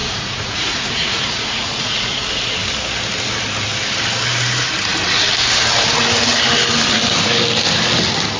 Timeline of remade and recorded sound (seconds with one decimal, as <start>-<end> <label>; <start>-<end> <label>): 0.0-2.2 remade; 2.2-8.4 recorded